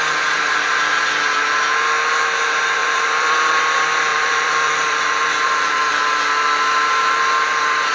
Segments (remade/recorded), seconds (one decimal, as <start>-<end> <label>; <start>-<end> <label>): 0.0-2.8 recorded; 2.8-3.5 remade; 3.5-4.1 recorded; 4.1-6.0 remade; 6.0-7.9 recorded

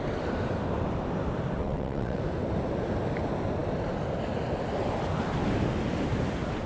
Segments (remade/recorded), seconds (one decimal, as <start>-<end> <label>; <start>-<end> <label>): 0.0-1.6 recorded; 1.6-2.2 remade; 2.2-6.7 recorded